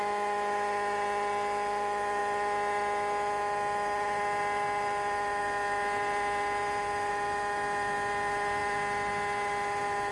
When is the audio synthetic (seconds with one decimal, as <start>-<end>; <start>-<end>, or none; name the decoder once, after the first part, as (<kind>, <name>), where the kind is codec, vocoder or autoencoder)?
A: none